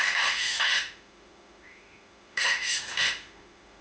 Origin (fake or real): fake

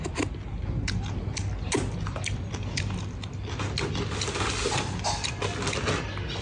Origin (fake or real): real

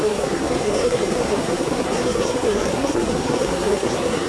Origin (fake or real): fake